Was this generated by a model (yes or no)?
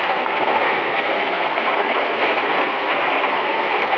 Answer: yes